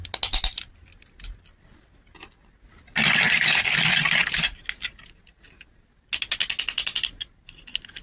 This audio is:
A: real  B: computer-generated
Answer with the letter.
A